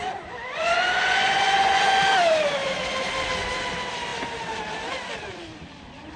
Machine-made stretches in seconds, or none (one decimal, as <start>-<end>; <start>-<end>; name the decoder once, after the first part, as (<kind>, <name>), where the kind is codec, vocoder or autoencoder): 0.5-2.0 (vocoder, Vocos)